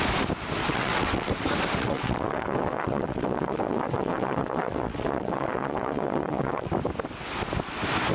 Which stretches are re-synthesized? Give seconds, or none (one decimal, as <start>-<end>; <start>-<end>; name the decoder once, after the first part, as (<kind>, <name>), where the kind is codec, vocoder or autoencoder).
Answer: 0.6-1.3 (vocoder, WaveNeXt); 1.8-6.7